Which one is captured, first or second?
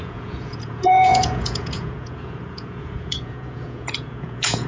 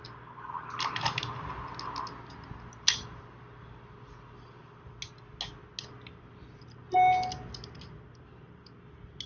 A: second